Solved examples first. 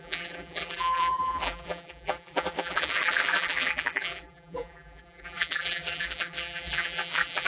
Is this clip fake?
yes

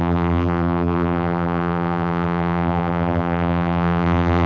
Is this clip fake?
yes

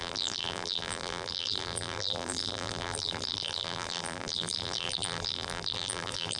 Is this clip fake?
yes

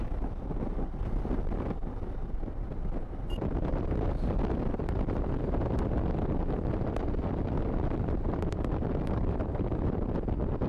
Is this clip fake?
yes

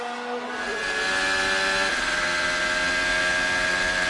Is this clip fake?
no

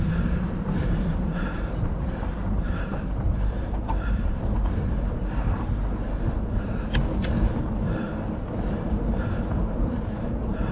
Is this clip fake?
yes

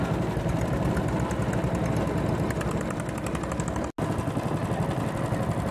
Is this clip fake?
no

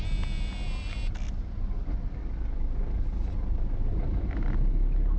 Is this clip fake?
no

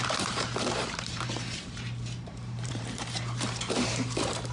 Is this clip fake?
yes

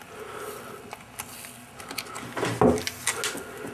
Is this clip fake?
no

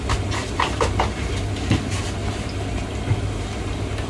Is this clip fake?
no